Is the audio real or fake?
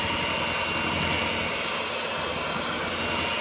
real